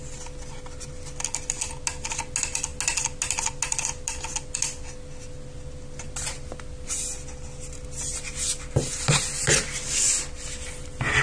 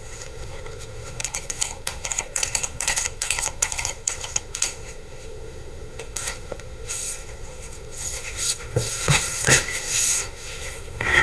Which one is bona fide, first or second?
first